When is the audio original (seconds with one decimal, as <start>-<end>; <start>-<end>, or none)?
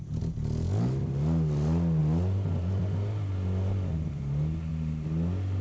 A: 0.0-5.6